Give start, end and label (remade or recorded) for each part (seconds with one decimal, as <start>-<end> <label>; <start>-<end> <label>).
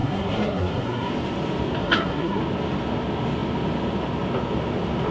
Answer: 0.0-1.1 remade; 1.1-1.8 recorded; 1.8-2.4 remade; 2.4-5.1 recorded